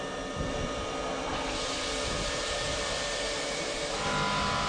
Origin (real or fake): real